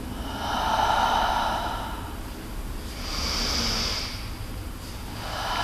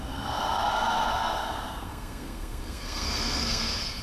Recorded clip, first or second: first